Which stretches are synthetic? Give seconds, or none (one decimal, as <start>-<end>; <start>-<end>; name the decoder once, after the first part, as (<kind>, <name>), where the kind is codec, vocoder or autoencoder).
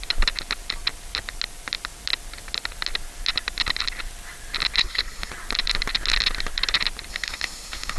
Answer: 4.8-5.3 (codec, SNAC); 7.1-8.0